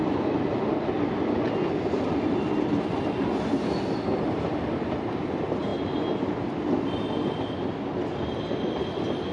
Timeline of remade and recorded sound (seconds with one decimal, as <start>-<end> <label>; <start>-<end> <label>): 0.0-9.3 recorded